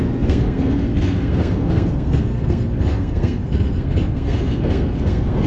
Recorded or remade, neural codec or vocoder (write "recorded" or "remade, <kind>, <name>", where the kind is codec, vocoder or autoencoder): remade, codec, SNAC